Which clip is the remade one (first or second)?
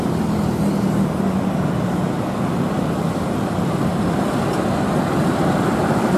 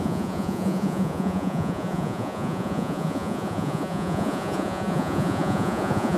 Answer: second